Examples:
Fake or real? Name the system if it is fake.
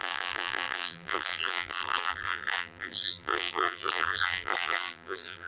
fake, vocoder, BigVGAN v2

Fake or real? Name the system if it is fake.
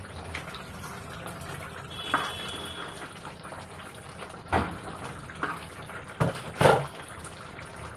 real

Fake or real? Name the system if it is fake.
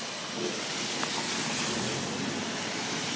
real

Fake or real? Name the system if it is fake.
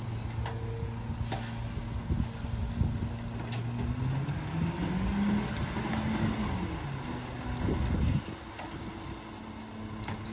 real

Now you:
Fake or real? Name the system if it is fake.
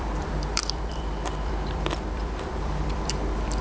fake, vocoder, BigVGAN v2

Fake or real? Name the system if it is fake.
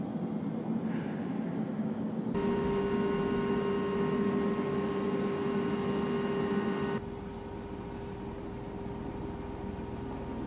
real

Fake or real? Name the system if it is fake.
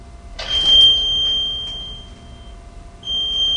real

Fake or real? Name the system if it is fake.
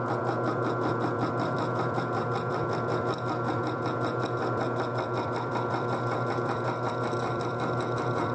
fake, vocoder, BigVGAN v2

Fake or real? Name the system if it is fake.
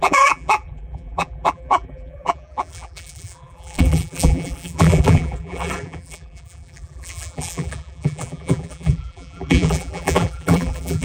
fake, vocoder, BigVGAN v2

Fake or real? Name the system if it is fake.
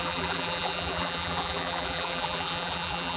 fake, vocoder, BigVGAN v2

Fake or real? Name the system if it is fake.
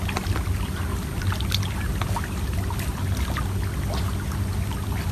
real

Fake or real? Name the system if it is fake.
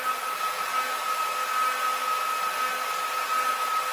real